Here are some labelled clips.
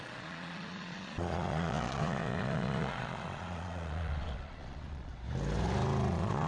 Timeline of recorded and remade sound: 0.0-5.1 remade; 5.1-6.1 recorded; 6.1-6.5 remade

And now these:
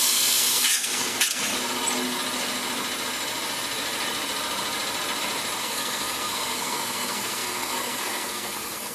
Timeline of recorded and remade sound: 0.0-1.5 remade; 1.5-5.6 recorded; 5.6-8.9 remade

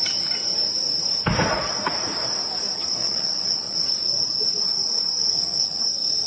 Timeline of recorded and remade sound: 0.0-3.0 recorded; 3.0-3.8 remade; 3.8-5.2 recorded; 5.2-5.8 remade; 5.8-6.3 recorded

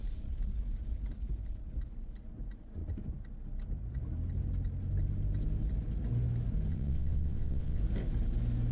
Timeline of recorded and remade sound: 0.0-6.7 recorded; 6.7-7.8 remade; 7.8-8.7 recorded

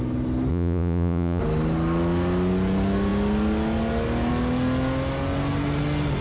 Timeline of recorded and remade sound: 0.0-0.5 recorded; 0.5-1.4 remade; 1.4-6.2 recorded